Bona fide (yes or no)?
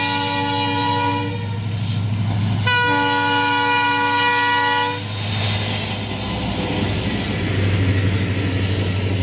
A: yes